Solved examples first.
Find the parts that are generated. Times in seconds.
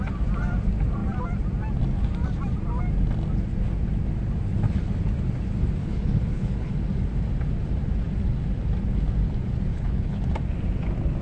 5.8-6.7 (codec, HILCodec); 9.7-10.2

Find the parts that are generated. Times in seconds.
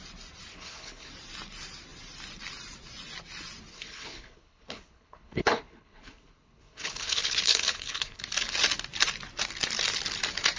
0.5-1.1 (codec, HILCodec); 3.7-8.2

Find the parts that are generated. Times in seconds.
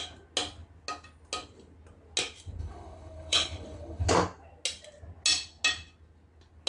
2.6-4.1 (codec, HILCodec)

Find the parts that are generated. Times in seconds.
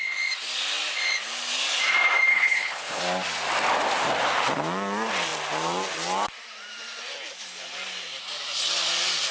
2.3-3.0 (codec, HILCodec)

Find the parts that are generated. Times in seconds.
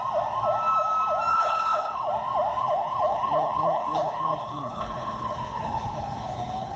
1.3-2.1 (codec, HILCodec); 2.6-6.8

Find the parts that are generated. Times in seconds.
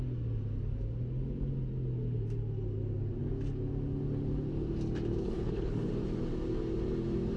5.2-5.9 (codec, HILCodec)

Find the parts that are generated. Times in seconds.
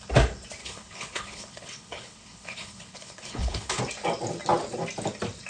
0.6-3.8 (codec, HILCodec)